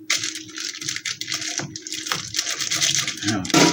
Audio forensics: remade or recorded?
recorded